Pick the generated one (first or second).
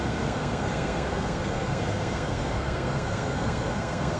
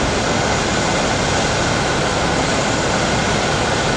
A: first